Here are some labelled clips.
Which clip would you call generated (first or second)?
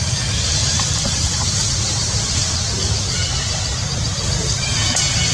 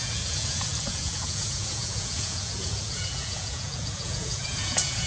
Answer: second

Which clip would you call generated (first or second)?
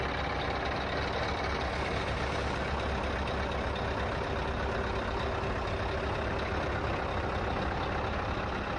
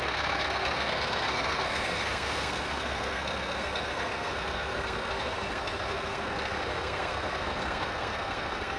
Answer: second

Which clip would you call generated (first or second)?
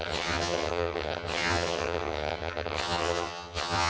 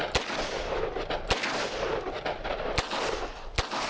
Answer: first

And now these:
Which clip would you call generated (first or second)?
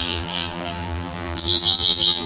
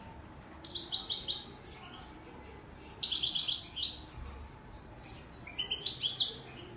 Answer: first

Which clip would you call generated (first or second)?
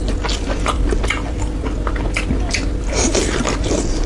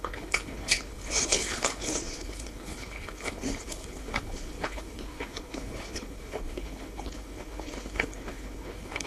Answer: second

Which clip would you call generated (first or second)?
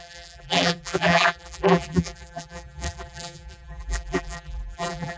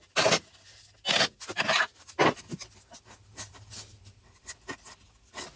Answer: first